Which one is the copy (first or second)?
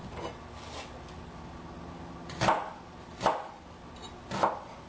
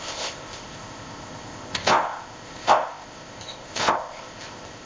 second